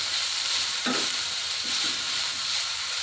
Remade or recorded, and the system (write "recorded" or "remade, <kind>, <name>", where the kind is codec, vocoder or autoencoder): remade, vocoder, BigVGAN v2